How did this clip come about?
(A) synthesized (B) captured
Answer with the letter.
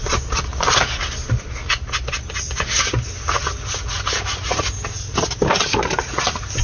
B